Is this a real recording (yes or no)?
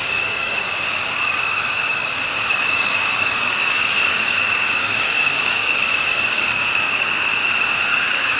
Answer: no